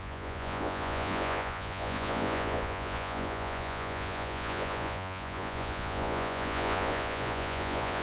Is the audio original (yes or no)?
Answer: no